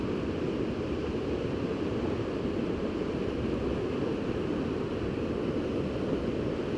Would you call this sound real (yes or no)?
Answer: yes